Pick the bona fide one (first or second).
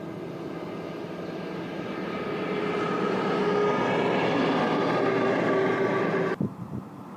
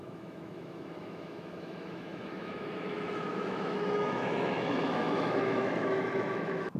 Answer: first